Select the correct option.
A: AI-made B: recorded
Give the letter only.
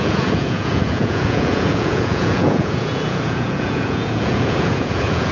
A